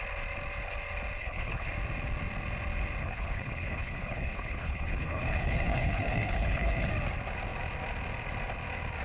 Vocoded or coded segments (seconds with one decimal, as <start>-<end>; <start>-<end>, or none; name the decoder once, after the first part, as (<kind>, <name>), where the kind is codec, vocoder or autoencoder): 1.2-1.7 (codec, HILCodec); 3.0-6.9